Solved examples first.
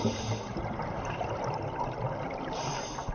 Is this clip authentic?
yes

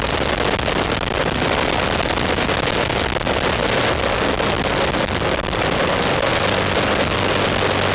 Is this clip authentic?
yes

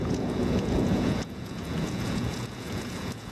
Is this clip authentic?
no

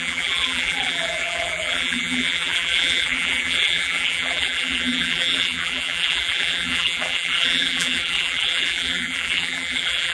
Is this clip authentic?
no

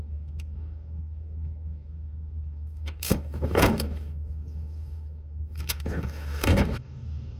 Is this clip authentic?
no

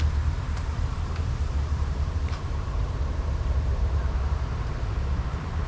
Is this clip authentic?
no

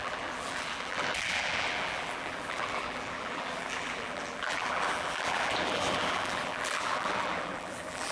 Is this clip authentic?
no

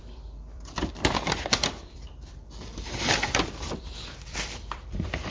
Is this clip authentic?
no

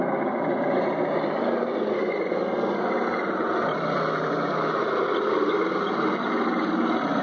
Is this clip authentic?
yes